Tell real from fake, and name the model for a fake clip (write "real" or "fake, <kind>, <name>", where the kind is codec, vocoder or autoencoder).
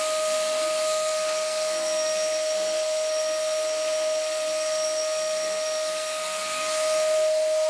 fake, codec, SNAC